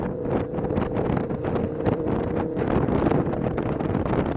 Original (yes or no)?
no